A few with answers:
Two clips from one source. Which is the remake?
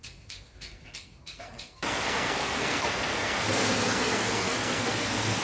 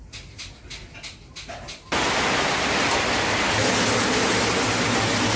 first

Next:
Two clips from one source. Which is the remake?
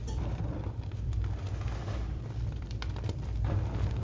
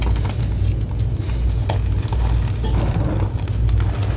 first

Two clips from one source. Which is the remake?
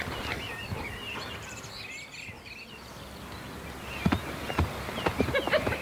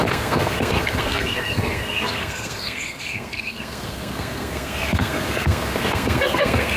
second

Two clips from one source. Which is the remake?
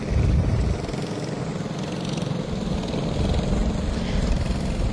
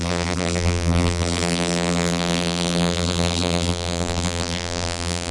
second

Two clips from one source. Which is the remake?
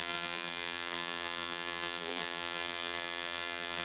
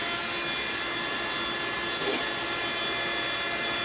first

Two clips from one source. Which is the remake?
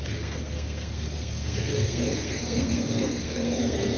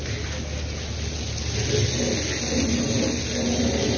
first